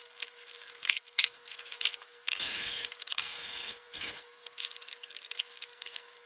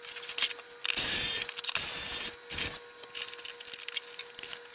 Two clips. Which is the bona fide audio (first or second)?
second